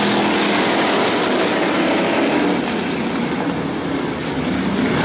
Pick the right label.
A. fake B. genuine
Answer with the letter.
B